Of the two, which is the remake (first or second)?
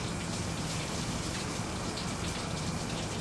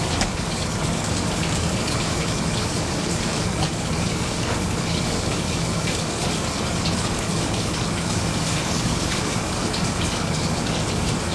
second